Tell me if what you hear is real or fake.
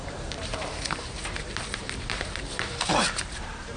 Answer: fake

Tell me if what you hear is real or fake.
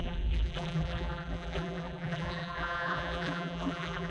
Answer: fake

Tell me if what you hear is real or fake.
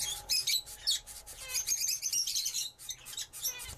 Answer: fake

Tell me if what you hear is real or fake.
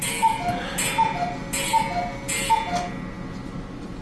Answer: real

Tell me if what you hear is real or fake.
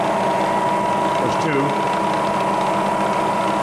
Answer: real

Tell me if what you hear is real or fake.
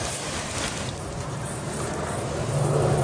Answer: real